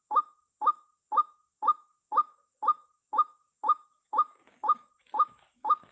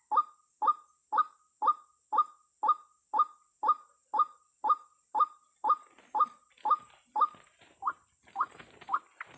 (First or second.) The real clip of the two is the second